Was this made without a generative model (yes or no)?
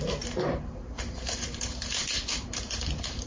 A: no